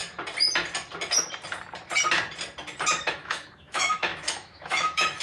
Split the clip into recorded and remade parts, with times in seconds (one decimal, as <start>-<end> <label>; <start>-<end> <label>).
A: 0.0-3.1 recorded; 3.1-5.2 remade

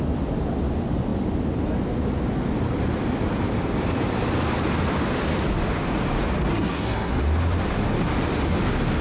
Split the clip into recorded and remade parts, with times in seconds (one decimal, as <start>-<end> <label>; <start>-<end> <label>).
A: 0.0-6.5 recorded; 6.5-7.1 remade; 7.1-9.0 recorded

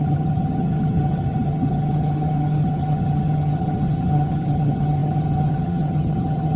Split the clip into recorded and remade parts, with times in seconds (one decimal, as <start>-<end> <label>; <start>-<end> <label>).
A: 0.0-6.6 remade

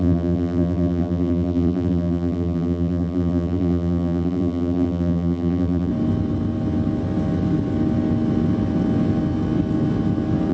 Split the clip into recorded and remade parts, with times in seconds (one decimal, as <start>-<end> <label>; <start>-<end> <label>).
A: 0.0-5.9 remade; 5.9-10.5 recorded